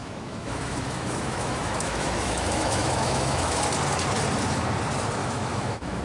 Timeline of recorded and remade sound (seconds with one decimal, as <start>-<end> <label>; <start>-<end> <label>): 0.0-3.6 remade; 3.6-5.2 recorded; 5.2-6.0 remade